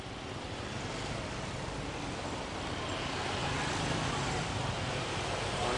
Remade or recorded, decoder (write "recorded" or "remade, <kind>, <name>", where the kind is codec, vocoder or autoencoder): recorded